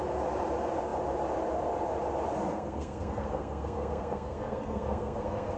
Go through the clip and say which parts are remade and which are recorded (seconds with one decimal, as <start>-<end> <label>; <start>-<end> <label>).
0.0-2.5 recorded; 2.5-5.6 remade